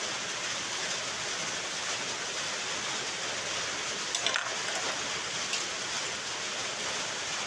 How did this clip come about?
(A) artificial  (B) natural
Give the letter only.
B